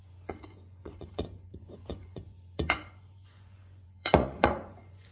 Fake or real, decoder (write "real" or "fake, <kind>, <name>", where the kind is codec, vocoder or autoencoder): fake, vocoder, Vocos